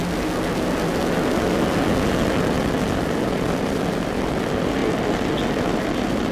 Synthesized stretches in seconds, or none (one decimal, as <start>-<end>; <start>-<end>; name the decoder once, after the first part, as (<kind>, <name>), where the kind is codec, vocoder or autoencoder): none